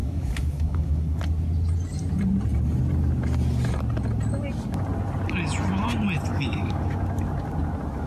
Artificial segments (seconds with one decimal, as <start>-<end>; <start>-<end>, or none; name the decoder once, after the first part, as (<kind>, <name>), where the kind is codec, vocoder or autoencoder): 0.0-1.2 (codec, DAC); 6.3-6.8